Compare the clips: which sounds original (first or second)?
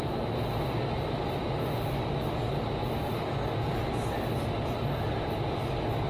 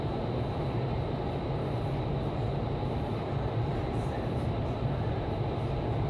first